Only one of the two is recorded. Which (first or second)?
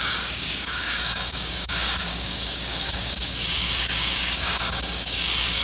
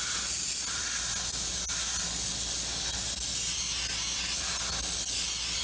second